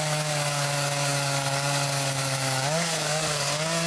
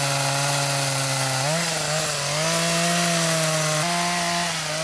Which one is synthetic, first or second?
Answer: first